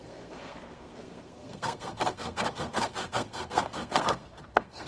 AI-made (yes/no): yes